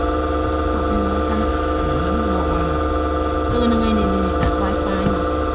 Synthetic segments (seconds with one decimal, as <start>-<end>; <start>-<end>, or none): 1.5-2.0